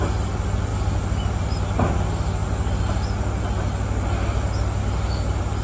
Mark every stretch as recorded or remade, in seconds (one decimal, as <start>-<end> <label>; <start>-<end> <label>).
0.0-0.7 recorded; 0.7-1.4 remade; 1.4-4.8 recorded; 4.8-5.6 remade